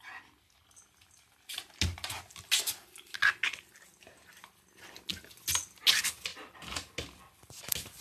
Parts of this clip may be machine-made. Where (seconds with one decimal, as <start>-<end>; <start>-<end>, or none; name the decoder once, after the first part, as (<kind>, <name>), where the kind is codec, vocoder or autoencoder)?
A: none